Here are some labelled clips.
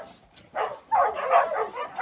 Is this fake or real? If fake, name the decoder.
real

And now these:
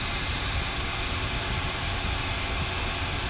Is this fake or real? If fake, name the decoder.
real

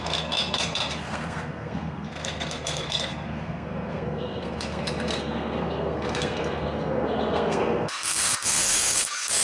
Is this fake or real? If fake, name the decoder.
fake, codec, SNAC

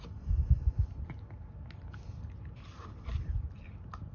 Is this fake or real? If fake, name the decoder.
real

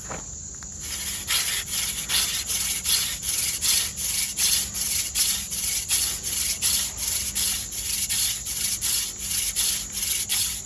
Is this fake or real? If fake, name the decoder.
real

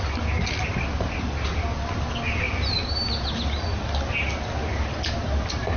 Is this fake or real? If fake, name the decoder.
real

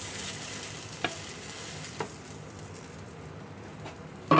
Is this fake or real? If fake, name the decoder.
real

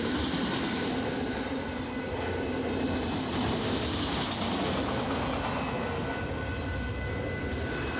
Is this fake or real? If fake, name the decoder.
real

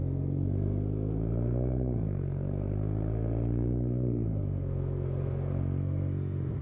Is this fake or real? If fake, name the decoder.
fake, codec, SNAC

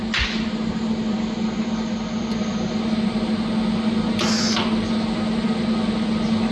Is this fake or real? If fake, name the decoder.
real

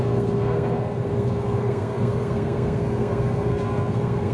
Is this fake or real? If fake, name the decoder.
fake, codec, SNAC